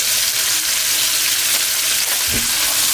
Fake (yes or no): no